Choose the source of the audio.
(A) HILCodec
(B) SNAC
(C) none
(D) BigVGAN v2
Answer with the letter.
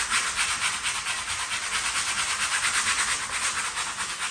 C